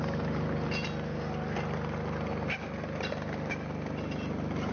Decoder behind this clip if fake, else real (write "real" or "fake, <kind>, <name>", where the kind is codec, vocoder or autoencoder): real